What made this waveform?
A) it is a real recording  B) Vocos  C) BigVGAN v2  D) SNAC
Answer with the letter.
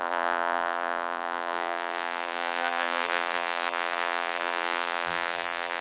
C